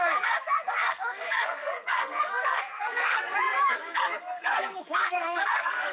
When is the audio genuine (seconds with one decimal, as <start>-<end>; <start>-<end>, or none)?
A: none

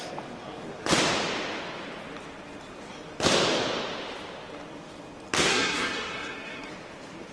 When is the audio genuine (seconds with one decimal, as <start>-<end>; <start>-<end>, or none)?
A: 0.0-5.5; 6.7-7.3

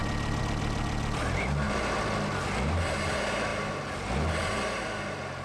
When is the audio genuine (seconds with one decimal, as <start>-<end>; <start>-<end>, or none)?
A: 0.0-5.4

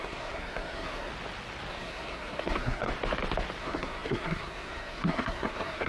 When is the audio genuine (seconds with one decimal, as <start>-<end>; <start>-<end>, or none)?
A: 1.1-1.7; 2.9-3.6